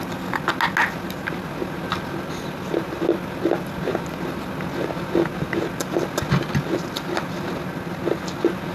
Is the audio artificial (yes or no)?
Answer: no